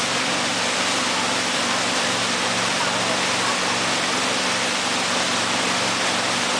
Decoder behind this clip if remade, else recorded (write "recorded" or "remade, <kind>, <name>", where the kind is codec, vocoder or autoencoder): recorded